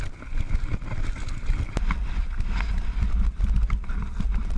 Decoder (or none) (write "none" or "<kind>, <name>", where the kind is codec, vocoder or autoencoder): none